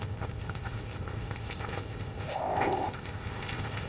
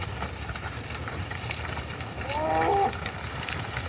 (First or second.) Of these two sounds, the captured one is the second